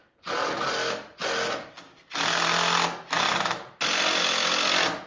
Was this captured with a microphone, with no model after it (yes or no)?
yes